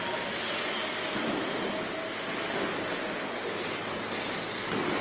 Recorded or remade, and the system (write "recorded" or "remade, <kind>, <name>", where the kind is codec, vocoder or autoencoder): recorded